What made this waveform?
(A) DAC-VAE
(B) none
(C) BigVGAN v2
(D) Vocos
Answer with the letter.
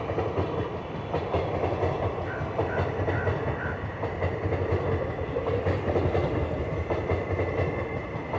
B